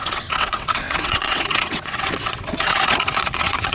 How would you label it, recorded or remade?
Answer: remade